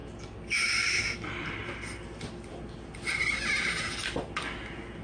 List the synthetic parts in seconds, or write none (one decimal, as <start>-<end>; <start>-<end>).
0.0-1.0; 1.6-4.6